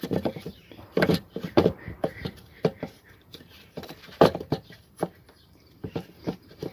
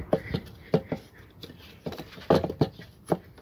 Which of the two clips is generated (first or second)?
first